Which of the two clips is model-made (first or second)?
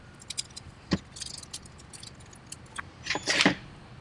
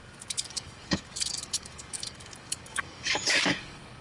second